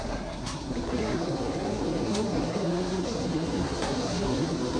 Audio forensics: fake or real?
fake